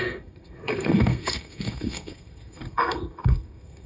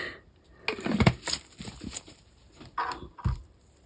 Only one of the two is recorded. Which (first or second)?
second